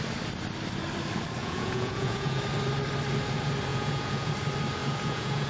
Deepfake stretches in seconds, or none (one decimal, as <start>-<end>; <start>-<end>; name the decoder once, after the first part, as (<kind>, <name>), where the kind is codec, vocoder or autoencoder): 1.4-2.4 (vocoder, Vocos); 3.7-4.3; 4.8-5.5